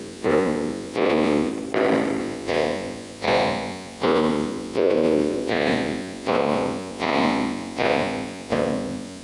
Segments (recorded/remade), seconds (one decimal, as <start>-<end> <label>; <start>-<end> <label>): 0.0-1.5 remade; 1.5-2.2 recorded; 2.2-9.2 remade